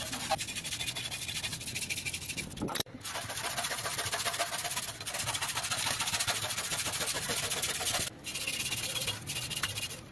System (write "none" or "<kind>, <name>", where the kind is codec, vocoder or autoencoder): none